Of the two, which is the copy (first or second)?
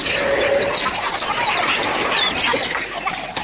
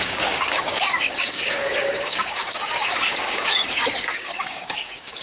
second